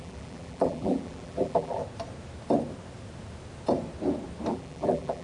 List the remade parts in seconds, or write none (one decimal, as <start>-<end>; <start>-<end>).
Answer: 0.0-1.8; 4.5-5.2